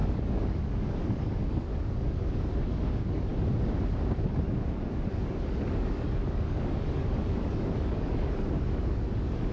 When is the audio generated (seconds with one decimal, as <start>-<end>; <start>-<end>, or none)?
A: 0.0-3.3; 4.3-9.5